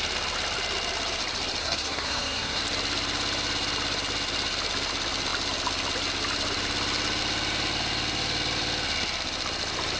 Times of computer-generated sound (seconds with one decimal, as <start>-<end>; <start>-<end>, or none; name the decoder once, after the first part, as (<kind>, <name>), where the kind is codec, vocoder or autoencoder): 1.6-2.6 (codec, SNAC)